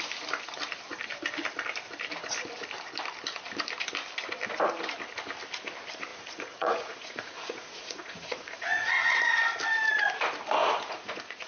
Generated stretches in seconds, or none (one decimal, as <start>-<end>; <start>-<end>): 6.1-9.2; 10.6-11.5